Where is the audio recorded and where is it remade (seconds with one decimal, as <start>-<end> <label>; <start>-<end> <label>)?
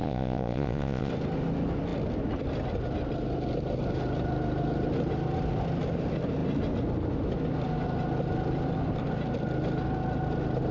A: 0.0-1.1 remade; 1.1-10.7 recorded